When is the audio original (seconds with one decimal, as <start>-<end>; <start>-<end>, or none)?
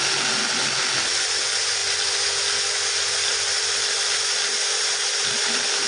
0.0-5.9